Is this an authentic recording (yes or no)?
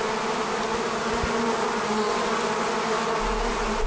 yes